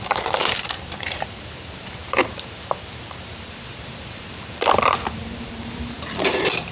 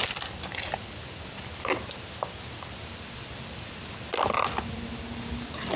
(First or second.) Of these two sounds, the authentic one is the second